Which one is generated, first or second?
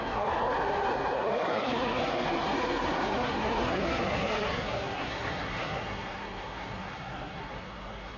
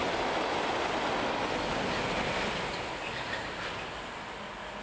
first